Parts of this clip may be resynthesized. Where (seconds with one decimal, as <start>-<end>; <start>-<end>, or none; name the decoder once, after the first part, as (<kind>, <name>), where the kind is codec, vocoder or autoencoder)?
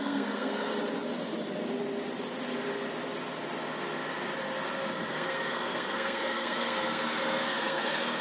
0.0-0.7 (codec, SNAC); 5.1-8.2